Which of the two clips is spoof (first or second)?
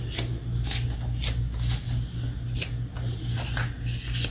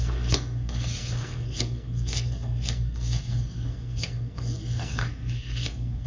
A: second